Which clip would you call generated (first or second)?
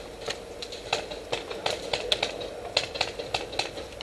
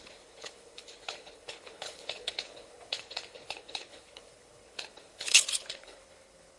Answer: second